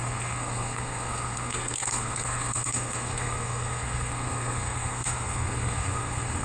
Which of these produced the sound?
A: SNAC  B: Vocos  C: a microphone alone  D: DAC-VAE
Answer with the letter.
A